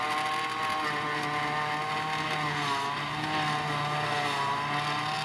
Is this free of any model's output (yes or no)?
yes